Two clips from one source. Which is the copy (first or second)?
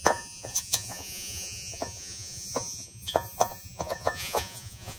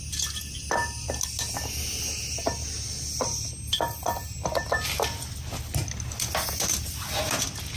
first